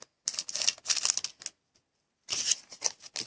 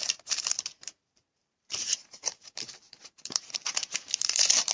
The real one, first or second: first